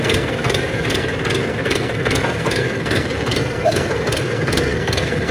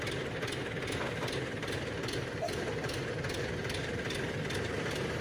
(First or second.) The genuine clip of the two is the second